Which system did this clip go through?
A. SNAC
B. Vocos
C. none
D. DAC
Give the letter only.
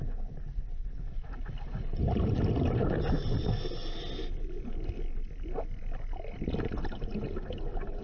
C